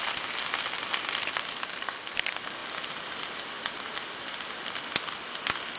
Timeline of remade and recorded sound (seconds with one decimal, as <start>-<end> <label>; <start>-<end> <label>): 0.0-5.8 recorded